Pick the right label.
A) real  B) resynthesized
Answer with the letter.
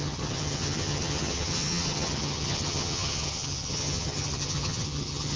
B